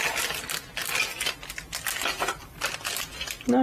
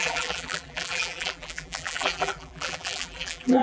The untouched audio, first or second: first